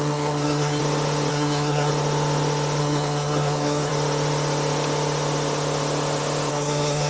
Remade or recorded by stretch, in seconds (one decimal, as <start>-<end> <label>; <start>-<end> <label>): 0.0-0.8 remade; 0.8-1.3 recorded; 1.3-1.9 remade; 1.9-2.8 recorded; 2.8-3.9 remade; 3.9-6.5 recorded; 6.5-7.1 remade